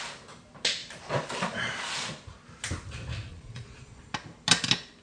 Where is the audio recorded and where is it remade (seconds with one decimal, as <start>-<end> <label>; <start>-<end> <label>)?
0.0-3.3 recorded; 3.3-4.0 remade; 4.0-5.0 recorded